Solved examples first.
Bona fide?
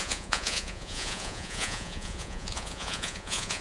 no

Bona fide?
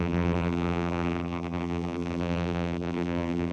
no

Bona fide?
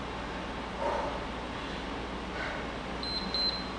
yes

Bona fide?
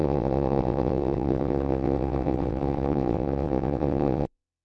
no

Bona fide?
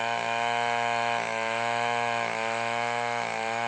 no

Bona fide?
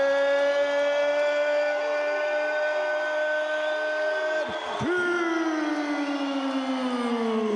yes